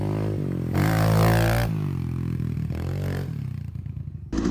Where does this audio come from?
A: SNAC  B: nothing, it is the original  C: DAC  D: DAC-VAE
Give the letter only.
B